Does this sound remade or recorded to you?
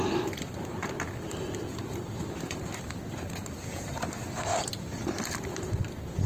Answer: recorded